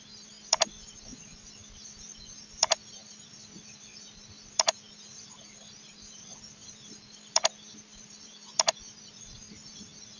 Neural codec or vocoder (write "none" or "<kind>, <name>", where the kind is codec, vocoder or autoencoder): none